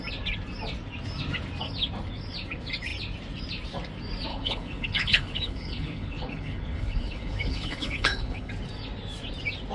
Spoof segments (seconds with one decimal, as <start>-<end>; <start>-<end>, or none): 4.3-8.5